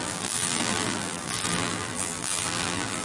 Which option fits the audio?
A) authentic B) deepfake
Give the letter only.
B